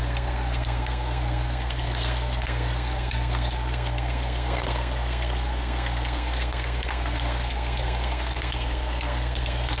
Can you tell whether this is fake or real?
fake